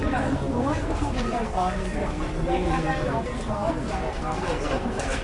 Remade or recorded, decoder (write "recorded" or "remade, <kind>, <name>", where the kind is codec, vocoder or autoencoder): remade, codec, SNAC